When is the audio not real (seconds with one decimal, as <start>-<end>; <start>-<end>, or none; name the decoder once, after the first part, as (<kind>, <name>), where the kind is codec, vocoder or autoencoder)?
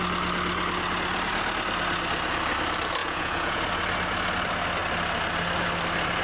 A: 3.0-3.6 (vocoder, Vocos)